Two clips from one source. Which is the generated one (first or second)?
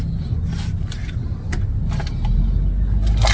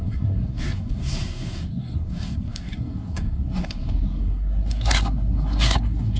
second